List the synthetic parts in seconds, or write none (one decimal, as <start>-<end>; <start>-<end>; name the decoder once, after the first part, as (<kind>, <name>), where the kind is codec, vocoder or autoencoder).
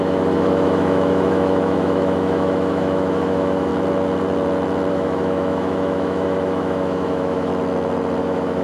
0.0-3.7 (autoencoder, DAC-VAE); 4.9-7.5; 8.2-8.6